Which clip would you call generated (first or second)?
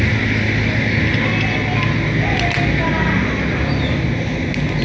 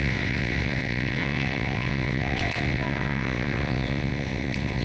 second